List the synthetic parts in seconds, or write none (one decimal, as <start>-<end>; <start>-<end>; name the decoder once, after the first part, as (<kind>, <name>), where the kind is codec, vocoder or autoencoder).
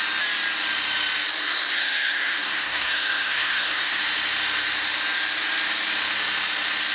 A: 1.4-4.0 (codec, SNAC)